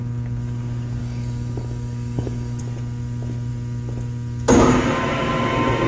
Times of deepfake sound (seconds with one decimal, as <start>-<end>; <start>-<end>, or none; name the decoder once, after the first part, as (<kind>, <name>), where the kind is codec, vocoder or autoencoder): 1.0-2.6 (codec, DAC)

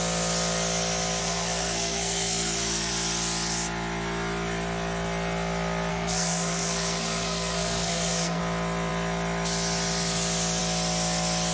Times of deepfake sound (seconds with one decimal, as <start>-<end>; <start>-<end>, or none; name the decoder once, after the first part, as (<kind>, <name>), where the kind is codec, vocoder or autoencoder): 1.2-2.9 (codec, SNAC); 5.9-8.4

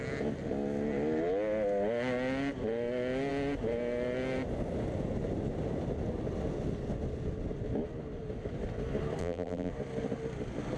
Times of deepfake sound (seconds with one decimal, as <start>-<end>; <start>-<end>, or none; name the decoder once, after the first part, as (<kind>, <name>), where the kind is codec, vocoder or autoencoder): 9.2-9.7 (vocoder, BigVGAN v2)